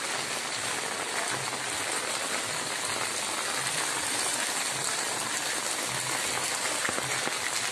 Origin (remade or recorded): recorded